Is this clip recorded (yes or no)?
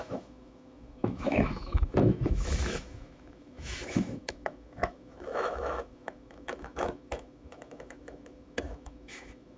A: no